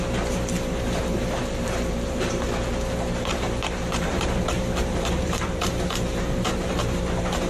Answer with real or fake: fake